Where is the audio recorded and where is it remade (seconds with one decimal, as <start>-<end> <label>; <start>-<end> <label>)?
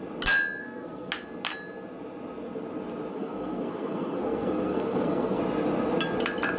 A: 0.0-0.6 recorded; 0.6-1.1 remade; 1.1-3.1 recorded; 3.1-5.4 remade; 5.4-6.6 recorded